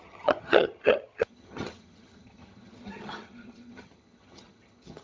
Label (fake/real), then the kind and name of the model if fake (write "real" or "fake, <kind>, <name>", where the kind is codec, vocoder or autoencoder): fake, vocoder, HiFi-GAN